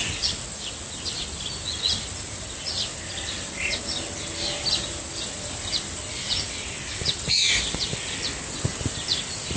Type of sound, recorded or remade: recorded